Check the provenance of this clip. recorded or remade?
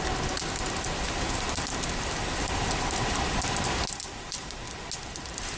recorded